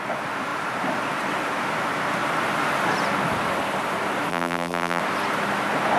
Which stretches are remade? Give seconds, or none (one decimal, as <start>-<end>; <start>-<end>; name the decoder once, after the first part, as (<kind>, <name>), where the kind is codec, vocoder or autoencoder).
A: 4.3-5.0 (vocoder, BigVGAN v2)